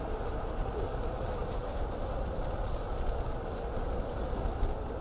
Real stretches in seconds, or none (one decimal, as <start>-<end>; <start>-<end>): 0.0-5.0